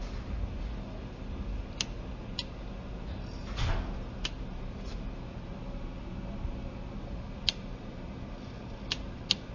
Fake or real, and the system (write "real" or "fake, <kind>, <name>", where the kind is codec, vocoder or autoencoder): real